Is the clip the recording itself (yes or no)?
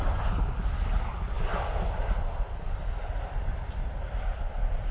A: yes